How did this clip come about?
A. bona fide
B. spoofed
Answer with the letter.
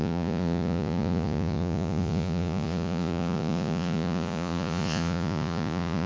B